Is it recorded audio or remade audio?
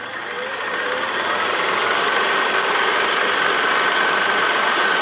remade